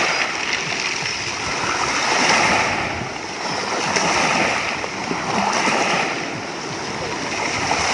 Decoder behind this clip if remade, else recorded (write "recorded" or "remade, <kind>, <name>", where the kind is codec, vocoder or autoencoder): recorded